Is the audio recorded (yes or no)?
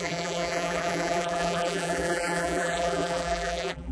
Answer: no